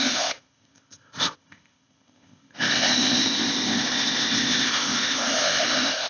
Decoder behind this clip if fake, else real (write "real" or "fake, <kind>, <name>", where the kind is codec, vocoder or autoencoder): fake, codec, ZipCodec